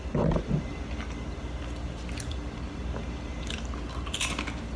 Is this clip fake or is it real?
real